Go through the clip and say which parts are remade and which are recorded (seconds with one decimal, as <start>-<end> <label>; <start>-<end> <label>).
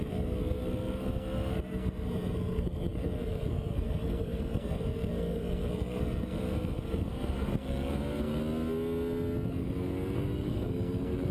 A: 0.0-8.4 remade; 8.4-9.5 recorded; 9.5-11.3 remade